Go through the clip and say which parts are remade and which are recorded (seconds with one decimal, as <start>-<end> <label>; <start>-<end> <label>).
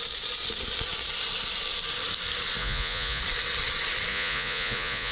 0.0-2.6 recorded; 2.6-3.2 remade; 3.2-4.1 recorded; 4.1-5.1 remade